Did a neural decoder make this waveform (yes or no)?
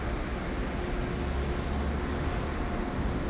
no